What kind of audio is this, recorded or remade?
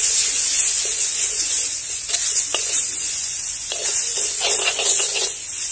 remade